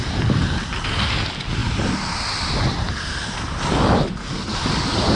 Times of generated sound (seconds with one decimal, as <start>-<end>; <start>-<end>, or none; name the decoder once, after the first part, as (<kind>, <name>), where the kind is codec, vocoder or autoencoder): none